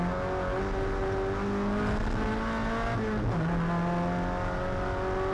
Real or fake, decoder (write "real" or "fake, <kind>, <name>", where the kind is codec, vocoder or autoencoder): real